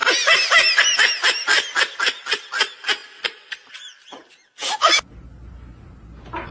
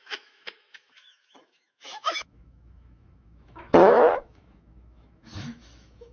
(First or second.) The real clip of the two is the first